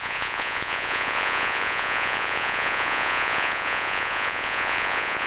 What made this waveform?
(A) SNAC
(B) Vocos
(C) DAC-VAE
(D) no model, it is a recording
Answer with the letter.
B